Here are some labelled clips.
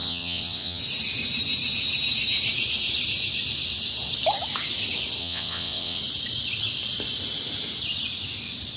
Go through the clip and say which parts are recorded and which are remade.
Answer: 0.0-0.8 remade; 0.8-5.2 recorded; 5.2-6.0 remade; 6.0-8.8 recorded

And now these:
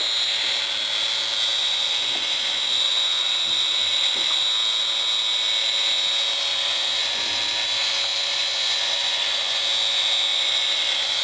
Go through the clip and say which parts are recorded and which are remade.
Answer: 0.0-1.6 recorded; 1.6-4.4 remade; 4.4-6.5 recorded; 6.5-7.3 remade; 7.3-8.1 recorded; 8.1-9.6 remade; 9.6-10.3 recorded; 10.3-11.2 remade

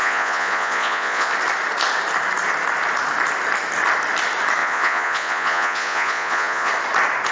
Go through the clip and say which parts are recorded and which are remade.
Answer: 0.0-1.3 remade; 1.3-4.6 recorded; 4.6-6.7 remade; 6.7-7.3 recorded

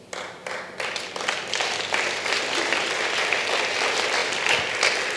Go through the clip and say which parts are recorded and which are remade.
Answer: 0.0-5.2 recorded

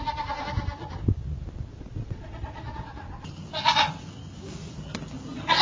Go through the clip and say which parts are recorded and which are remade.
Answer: 0.0-1.7 recorded; 1.7-2.7 remade; 2.7-5.6 recorded

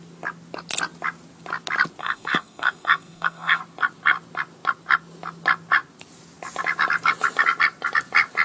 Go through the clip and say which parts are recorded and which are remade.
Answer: 0.0-2.0 recorded; 2.0-3.6 remade; 3.6-8.4 recorded

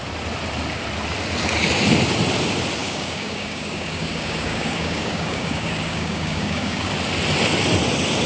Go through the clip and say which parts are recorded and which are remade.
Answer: 0.0-2.8 recorded; 2.8-6.9 remade; 6.9-8.3 recorded